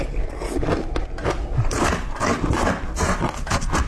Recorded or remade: recorded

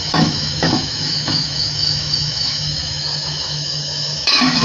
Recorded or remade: remade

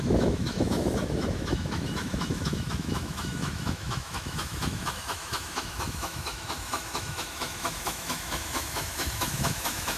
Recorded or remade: remade